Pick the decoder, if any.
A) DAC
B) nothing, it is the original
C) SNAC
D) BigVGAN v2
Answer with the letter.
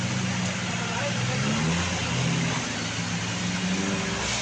B